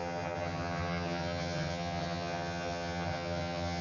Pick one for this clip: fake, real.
fake